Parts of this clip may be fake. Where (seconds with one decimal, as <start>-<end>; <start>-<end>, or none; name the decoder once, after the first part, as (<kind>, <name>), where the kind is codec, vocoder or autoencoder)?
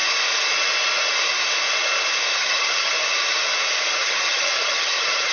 2.4-2.9 (vocoder, HiFi-GAN); 4.0-5.3